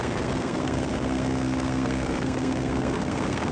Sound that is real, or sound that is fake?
fake